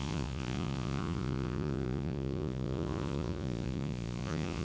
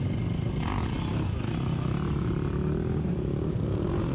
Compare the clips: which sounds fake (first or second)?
first